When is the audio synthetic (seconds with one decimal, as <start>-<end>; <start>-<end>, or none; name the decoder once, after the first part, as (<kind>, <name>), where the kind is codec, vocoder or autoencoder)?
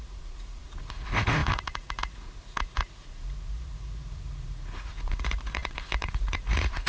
0.0-6.9 (vocoder, Vocos)